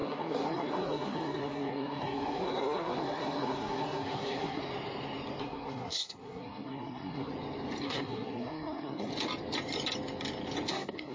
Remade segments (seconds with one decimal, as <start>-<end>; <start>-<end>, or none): 0.0-4.6; 5.4-7.3; 7.8-9.1; 10.7-11.1